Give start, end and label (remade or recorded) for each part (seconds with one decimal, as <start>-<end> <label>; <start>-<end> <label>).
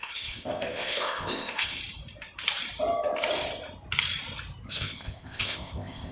0.0-1.8 remade; 1.8-4.7 recorded; 4.7-6.1 remade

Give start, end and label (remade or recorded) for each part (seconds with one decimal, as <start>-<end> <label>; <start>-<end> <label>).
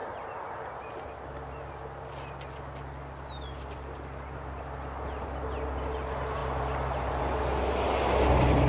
0.0-0.5 remade; 0.5-6.4 recorded; 6.4-7.2 remade; 7.2-8.7 recorded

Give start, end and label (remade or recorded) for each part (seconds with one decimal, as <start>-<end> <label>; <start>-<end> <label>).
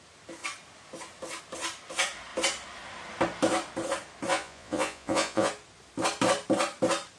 0.0-4.3 recorded; 4.3-5.5 remade; 5.5-7.2 recorded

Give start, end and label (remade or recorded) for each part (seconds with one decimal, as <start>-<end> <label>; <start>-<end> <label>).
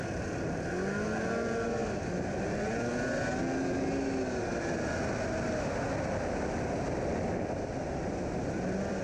0.0-9.0 recorded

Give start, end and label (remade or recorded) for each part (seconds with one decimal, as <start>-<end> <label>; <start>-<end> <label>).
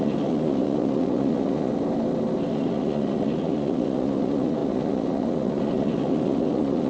0.0-1.7 remade; 1.7-2.5 recorded; 2.5-6.9 remade